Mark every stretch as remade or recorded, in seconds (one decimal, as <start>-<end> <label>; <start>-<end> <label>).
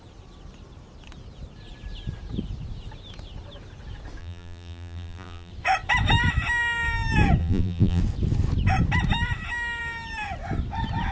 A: 0.0-4.2 recorded; 4.2-5.5 remade; 5.5-7.4 recorded; 7.4-8.0 remade; 8.0-11.1 recorded